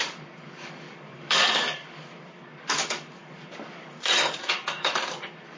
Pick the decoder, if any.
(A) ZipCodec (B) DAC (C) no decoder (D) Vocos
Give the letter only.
B